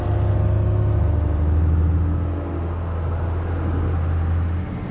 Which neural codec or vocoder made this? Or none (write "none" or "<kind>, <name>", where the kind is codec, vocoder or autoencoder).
none